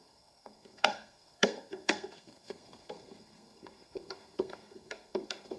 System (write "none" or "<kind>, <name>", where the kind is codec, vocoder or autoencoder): codec, SNAC